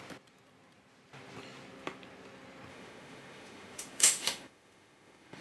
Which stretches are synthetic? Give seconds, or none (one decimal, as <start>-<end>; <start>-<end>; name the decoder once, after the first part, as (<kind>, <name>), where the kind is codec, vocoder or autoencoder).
2.7-5.4 (autoencoder, DAC-VAE)